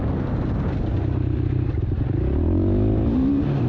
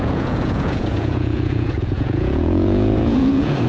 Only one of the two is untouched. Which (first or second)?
first